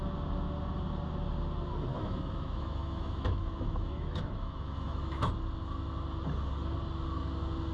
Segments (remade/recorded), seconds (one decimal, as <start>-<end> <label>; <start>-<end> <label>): 0.0-1.9 recorded; 1.9-5.3 remade; 5.3-7.7 recorded